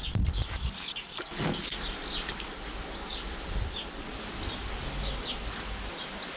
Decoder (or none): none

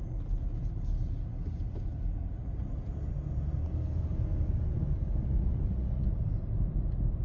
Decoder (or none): none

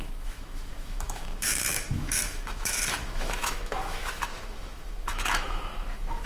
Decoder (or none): autoencoder, DAC-VAE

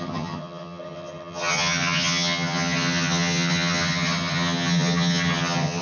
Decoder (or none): vocoder, HiFi-GAN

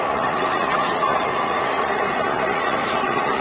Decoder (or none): vocoder, Vocos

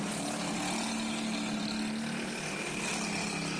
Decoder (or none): none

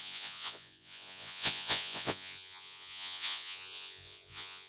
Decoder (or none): vocoder, Vocos